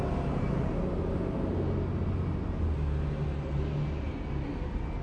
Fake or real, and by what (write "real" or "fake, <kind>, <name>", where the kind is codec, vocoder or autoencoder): real